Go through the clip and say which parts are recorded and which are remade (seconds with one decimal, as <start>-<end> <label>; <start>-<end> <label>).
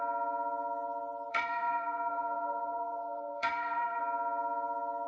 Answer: 0.0-1.3 recorded; 1.3-4.0 remade; 4.0-5.1 recorded